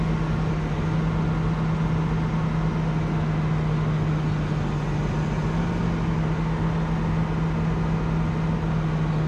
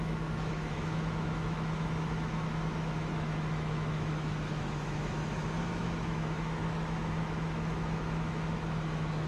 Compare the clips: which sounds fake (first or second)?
second